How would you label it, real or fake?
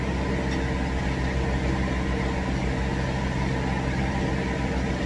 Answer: real